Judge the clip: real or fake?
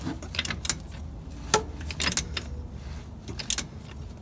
real